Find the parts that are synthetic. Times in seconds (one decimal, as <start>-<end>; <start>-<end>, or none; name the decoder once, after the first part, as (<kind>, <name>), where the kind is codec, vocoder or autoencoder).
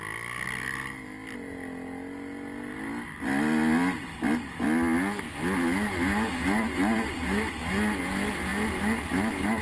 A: none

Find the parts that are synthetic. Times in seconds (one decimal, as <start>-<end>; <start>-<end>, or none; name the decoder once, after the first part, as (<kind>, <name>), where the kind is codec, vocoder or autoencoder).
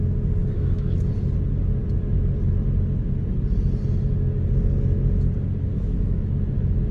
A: 0.4-1.0 (autoencoder, DAC-VAE); 5.7-6.3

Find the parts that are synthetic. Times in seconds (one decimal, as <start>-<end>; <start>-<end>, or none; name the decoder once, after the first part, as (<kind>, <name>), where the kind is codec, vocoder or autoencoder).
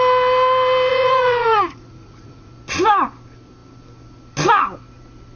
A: 0.9-2.5 (vocoder, Vocos)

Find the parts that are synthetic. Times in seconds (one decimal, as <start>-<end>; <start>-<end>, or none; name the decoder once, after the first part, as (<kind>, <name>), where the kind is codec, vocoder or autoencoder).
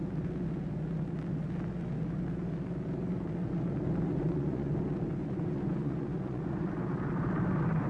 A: 4.1-4.7 (vocoder, Vocos); 5.2-6.7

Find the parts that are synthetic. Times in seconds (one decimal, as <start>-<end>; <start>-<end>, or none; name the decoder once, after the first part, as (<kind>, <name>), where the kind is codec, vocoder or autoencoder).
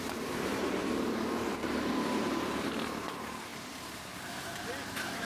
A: 0.0-3.5 (vocoder, BigVGAN v2)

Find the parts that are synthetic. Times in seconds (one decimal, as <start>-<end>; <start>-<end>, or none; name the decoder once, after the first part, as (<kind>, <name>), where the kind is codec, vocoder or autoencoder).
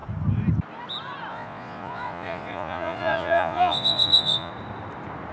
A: 1.3-4.5 (vocoder, Vocos)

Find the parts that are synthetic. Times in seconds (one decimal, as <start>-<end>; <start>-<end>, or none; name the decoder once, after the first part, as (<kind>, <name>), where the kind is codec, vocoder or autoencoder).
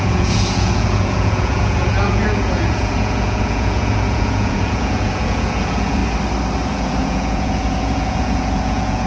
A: 0.0-6.0 (vocoder, Vocos); 6.7-9.1